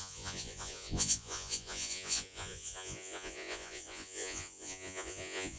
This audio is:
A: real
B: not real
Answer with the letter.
B